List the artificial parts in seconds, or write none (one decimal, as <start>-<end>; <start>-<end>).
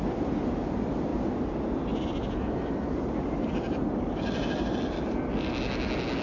1.1-4.8